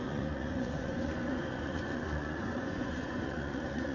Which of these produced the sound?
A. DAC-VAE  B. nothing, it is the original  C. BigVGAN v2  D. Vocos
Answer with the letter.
D